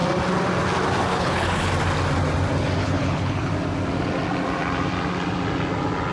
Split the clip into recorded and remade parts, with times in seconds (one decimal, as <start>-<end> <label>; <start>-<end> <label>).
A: 0.0-1.1 recorded; 1.1-1.7 remade; 1.7-2.8 recorded; 2.8-3.5 remade; 3.5-6.1 recorded